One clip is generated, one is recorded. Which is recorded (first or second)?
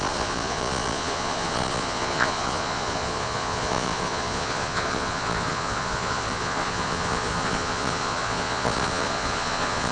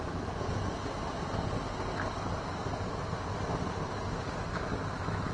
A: second